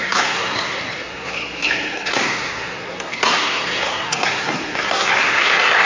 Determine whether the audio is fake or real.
fake